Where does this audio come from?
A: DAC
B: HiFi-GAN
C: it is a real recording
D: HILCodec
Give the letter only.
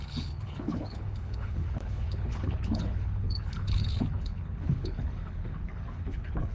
D